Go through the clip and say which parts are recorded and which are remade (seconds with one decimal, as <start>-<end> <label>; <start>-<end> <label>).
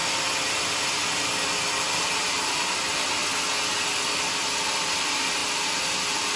0.0-6.4 recorded